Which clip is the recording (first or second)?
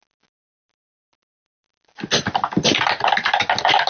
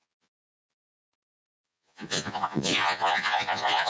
first